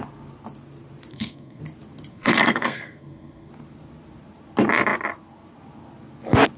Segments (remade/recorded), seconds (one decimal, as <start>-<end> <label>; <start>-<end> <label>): 0.0-1.1 recorded; 1.1-1.6 remade; 1.6-2.1 recorded; 2.1-3.5 remade; 3.5-6.6 recorded